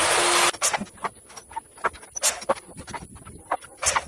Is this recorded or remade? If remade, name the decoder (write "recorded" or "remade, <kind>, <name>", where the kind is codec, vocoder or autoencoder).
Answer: recorded